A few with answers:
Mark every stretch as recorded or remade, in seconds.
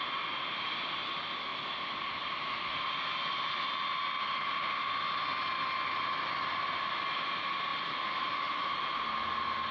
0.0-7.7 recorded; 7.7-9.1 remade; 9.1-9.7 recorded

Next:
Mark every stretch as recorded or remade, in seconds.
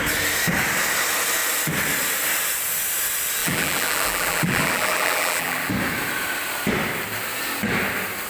0.0-3.4 recorded; 3.4-5.7 remade; 5.7-8.3 recorded